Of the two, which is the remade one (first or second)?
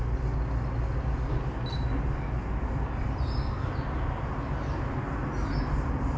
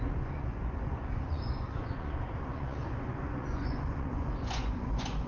second